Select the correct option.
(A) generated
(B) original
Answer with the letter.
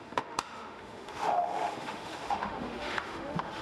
A